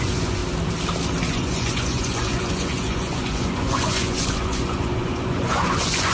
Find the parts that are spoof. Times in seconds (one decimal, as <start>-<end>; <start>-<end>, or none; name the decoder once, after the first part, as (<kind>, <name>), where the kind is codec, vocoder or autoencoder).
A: 0.0-0.4 (vocoder, Vocos); 1.3-6.1